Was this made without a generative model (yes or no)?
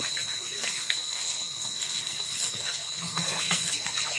no